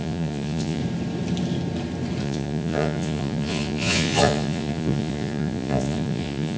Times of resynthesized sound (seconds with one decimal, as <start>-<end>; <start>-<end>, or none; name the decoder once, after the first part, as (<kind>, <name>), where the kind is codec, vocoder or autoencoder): 0.0-0.8 (vocoder, Vocos); 2.2-6.6

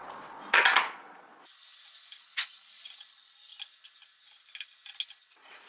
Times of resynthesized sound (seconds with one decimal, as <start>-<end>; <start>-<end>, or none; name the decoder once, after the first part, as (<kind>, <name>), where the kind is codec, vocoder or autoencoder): 0.0-1.3 (vocoder, Vocos); 2.2-3.5; 5.3-5.7

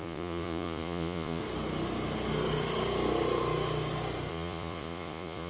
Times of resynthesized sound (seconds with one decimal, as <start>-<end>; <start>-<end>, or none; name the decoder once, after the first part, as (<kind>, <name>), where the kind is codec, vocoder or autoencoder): 0.0-1.4 (vocoder, Vocos); 4.3-5.5

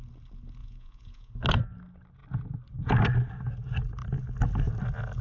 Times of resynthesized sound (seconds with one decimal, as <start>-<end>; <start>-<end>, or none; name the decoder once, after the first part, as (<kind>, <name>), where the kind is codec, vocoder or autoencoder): 0.6-1.3 (vocoder, Vocos)

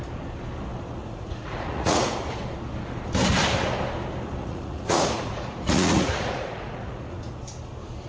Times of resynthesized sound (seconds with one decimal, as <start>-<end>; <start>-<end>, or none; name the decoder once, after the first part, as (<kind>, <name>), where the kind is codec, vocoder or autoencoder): 1.0-2.0 (vocoder, Vocos); 4.4-7.2